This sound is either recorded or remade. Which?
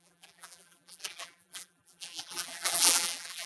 remade